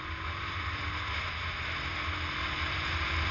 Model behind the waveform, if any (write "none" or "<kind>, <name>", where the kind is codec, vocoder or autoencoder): none